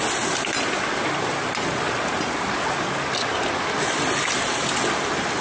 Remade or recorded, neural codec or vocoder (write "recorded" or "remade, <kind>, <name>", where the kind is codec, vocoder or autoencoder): recorded